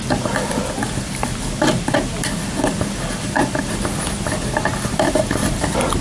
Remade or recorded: remade